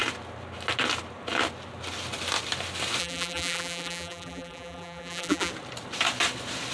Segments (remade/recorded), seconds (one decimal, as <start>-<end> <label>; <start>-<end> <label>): 0.0-3.0 recorded; 3.0-5.5 remade; 5.5-6.7 recorded